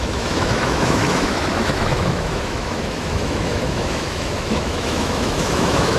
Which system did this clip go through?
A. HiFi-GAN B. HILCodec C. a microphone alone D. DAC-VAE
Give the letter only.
D